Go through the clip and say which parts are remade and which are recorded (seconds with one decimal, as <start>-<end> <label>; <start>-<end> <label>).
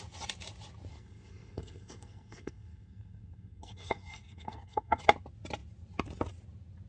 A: 0.0-0.9 recorded; 0.9-5.0 remade; 5.0-6.9 recorded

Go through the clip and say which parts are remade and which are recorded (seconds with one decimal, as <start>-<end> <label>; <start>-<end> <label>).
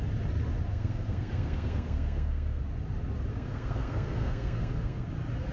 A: 0.0-0.7 recorded; 0.7-2.6 remade; 2.6-3.3 recorded; 3.3-5.1 remade; 5.1-5.5 recorded